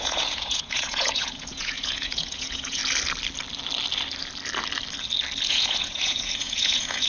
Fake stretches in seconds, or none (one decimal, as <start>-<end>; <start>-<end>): 0.0-2.8; 5.5-7.1